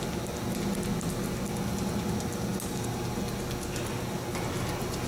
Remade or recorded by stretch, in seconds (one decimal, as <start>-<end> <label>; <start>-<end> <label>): 0.0-5.1 recorded